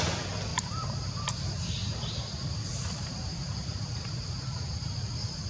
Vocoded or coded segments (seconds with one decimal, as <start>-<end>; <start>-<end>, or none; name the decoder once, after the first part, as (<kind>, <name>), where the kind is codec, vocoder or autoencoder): 0.5-1.3 (vocoder, BigVGAN v2); 1.8-5.1